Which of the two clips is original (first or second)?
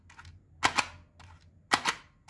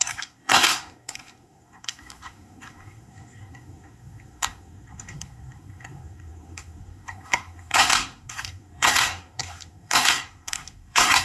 first